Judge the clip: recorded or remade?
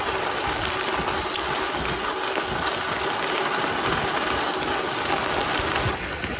recorded